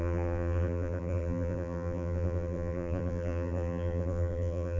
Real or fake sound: fake